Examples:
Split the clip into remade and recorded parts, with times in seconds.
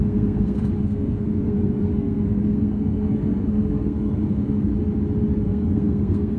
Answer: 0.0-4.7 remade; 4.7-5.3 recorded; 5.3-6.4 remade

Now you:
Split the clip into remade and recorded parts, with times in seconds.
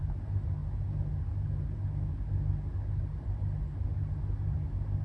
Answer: 0.0-5.0 recorded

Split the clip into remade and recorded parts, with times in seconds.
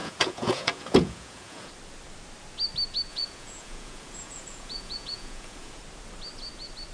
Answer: 0.0-1.7 remade; 1.7-3.1 recorded; 3.1-5.8 remade; 5.8-6.9 recorded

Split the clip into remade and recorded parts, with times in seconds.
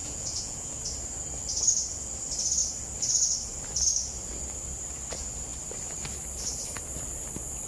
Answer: 0.0-0.7 remade; 0.7-7.7 recorded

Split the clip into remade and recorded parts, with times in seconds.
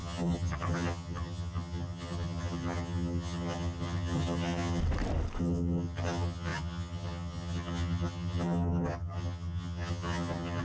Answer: 0.0-4.8 remade; 4.8-5.4 recorded; 5.4-10.6 remade